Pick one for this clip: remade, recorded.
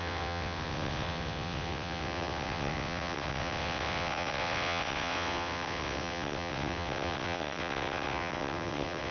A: remade